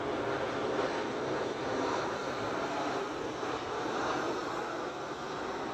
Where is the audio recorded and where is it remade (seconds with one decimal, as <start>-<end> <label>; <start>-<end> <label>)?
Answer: 0.0-2.2 recorded; 2.2-4.0 remade; 4.0-5.7 recorded